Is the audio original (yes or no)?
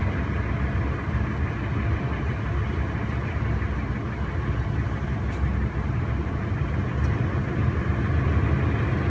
yes